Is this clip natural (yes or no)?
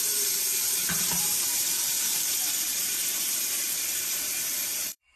no